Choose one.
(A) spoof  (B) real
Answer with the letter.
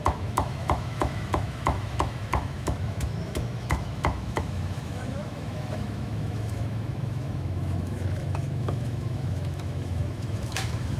A